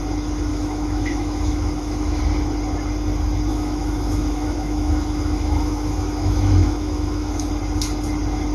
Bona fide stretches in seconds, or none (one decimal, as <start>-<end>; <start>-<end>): 0.0-0.5; 2.2-3.5; 7.5-8.5